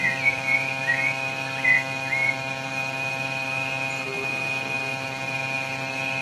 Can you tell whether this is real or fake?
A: real